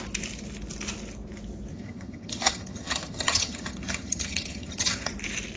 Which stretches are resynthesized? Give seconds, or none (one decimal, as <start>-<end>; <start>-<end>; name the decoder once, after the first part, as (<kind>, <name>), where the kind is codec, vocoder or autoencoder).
1.7-5.1 (vocoder, HiFi-GAN)